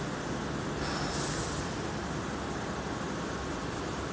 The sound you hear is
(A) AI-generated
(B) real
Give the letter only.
B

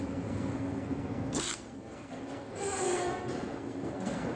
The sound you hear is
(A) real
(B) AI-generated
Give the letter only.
B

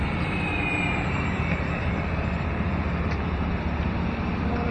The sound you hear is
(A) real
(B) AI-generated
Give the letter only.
B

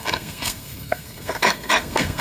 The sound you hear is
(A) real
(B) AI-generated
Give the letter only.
B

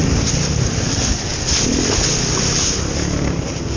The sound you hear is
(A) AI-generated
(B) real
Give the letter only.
B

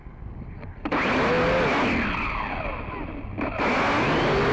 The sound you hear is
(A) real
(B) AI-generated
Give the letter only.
A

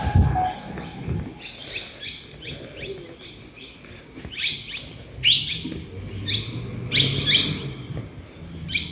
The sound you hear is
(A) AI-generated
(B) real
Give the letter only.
B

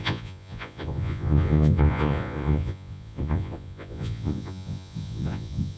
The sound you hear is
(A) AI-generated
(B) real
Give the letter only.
A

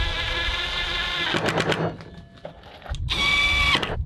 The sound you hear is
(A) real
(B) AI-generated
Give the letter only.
A